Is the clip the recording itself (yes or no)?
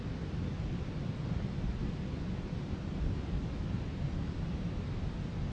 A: yes